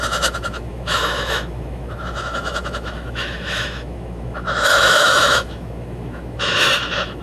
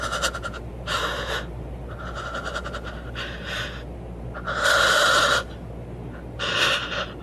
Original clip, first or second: second